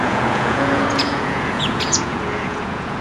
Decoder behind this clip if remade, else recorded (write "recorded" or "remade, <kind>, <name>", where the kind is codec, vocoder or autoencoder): remade, vocoder, Vocos